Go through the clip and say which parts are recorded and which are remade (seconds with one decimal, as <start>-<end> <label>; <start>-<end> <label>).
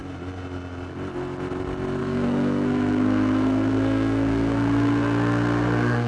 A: 0.0-2.0 recorded; 2.0-6.1 remade